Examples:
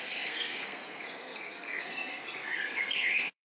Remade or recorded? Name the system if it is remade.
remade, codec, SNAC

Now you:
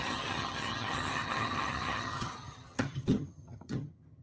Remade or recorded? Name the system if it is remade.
remade, vocoder, HiFi-GAN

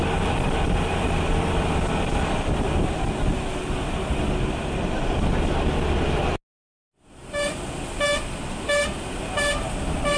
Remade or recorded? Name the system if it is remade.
recorded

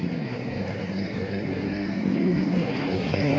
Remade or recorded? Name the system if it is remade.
remade, codec, SNAC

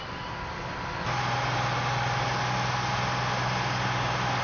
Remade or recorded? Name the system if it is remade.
recorded